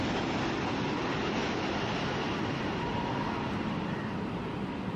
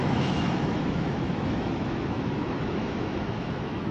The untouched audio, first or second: first